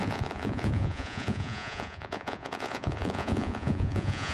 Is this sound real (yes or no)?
no